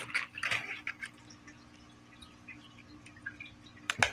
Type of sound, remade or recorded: recorded